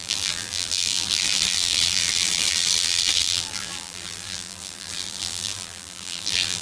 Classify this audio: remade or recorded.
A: remade